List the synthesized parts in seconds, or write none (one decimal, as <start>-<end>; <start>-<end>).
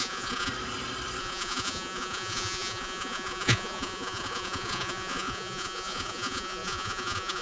0.0-0.5; 1.2-7.4